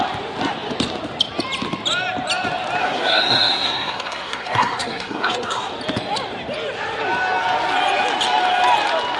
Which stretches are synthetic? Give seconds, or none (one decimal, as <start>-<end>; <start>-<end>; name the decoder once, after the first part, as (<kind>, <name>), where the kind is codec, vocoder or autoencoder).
2.8-5.7 (codec, SNAC)